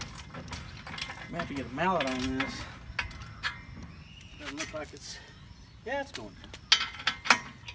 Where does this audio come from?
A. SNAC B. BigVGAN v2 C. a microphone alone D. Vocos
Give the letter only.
C